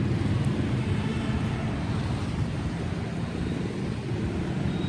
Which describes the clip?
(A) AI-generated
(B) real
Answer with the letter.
A